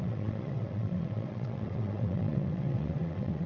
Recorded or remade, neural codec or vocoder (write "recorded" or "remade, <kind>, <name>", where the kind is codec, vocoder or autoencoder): remade, vocoder, WaveNeXt